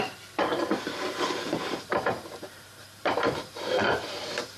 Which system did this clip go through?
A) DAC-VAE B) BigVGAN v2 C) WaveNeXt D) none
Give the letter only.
B